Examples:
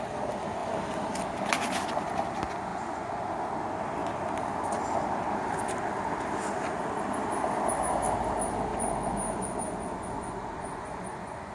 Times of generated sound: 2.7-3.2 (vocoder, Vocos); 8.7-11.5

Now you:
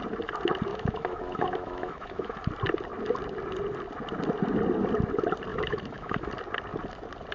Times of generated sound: 0.7-2.5 (autoencoder, DAC-VAE); 5.5-6.3